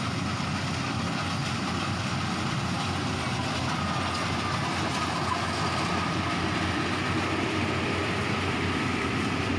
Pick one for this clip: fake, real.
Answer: real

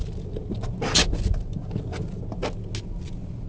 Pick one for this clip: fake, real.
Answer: real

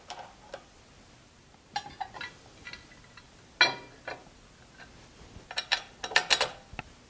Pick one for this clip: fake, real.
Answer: real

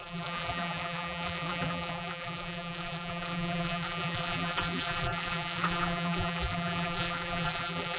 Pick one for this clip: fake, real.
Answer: fake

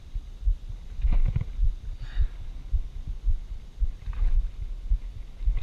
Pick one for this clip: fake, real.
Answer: real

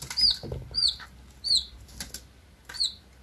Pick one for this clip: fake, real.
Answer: real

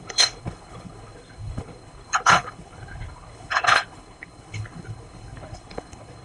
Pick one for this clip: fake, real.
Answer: fake